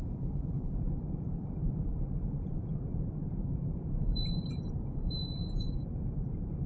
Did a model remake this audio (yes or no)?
yes